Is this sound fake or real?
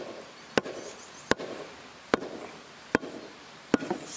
real